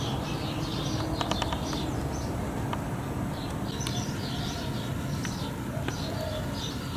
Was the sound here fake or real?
real